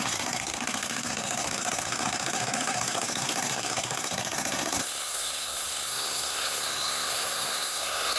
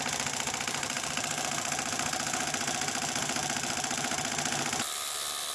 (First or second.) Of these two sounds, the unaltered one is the second